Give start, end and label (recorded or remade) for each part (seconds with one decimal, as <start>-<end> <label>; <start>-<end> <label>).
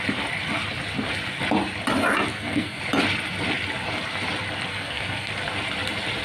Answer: 0.0-2.3 recorded; 2.3-2.8 remade; 2.8-4.7 recorded; 4.7-5.3 remade; 5.3-6.2 recorded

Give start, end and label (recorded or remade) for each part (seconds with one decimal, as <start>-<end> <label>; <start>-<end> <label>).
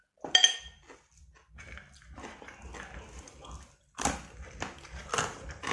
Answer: 0.0-5.7 recorded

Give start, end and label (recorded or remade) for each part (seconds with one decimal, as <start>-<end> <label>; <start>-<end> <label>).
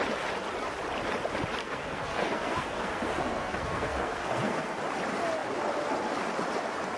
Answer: 0.0-1.6 recorded; 1.6-4.8 remade; 4.8-7.0 recorded